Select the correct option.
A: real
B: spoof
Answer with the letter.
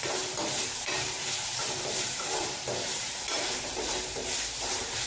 B